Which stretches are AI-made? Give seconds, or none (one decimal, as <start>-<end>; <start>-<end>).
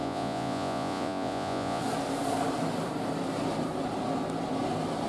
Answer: 0.0-1.8